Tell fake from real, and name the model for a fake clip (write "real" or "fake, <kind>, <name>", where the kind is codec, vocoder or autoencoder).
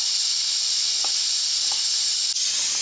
real